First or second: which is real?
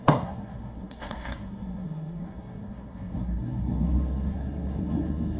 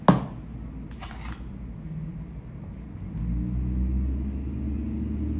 second